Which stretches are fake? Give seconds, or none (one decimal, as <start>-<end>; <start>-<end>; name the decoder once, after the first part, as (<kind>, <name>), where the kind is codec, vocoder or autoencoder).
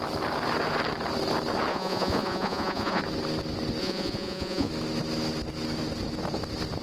1.7-3.0 (vocoder, Vocos); 3.8-4.7